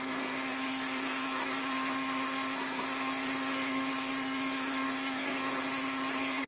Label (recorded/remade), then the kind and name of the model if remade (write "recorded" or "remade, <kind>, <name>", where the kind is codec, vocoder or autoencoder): remade, codec, SNAC